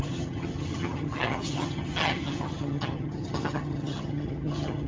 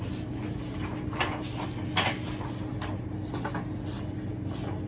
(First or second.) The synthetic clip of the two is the first